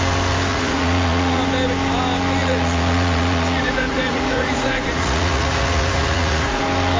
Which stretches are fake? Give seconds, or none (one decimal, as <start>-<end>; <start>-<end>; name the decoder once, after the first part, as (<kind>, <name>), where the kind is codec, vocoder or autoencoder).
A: 0.5-1.4 (vocoder, Vocos); 2.4-6.6